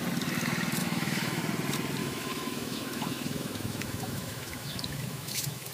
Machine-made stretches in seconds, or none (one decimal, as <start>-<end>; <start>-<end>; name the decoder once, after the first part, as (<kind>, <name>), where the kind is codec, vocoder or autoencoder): 0.8-1.4 (autoencoder, DAC-VAE); 2.0-5.7